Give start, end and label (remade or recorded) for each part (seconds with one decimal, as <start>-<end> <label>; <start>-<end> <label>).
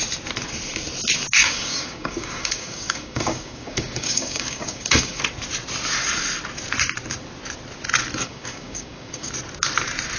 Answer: 0.0-1.4 recorded; 1.4-5.2 remade; 5.2-8.2 recorded; 8.2-9.3 remade; 9.3-10.2 recorded